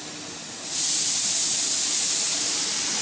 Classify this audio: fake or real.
real